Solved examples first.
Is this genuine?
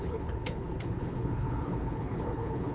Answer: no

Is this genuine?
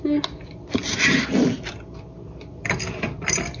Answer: yes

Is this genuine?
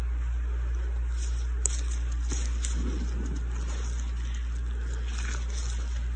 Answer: yes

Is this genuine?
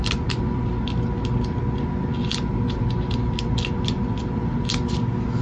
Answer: yes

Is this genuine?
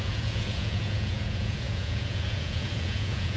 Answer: no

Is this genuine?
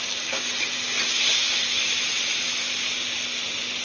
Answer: yes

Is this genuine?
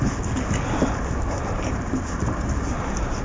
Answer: yes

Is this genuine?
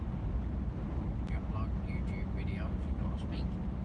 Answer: yes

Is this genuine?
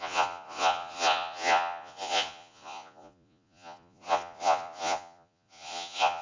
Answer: no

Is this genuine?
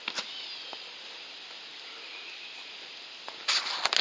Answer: yes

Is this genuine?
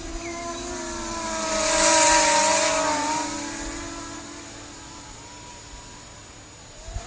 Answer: yes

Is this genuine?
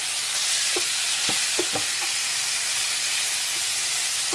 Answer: yes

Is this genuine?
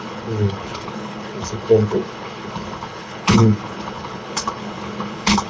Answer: no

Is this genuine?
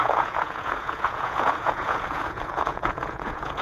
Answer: no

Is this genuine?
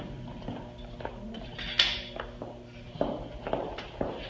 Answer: yes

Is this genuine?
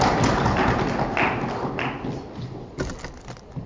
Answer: yes